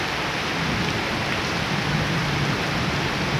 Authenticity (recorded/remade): recorded